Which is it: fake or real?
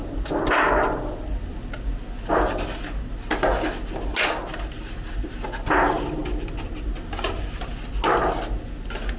real